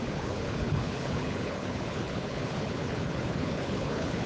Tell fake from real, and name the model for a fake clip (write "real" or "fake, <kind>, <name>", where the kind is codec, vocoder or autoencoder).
fake, codec, HILCodec